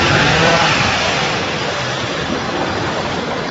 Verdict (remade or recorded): remade